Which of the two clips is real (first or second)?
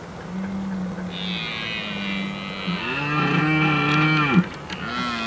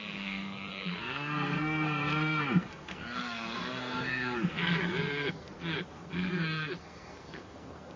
first